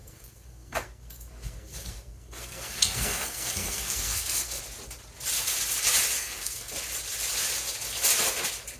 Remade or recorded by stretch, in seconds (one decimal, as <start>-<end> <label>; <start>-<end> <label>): 0.0-4.6 remade; 4.6-6.2 recorded; 6.2-6.7 remade; 6.7-8.8 recorded